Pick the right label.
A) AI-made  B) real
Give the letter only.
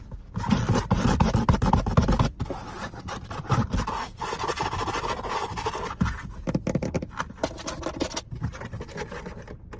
B